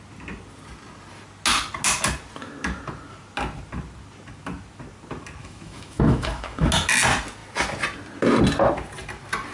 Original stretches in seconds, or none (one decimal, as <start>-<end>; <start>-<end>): 0.0-5.4; 6.7-9.5